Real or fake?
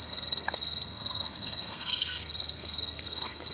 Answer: fake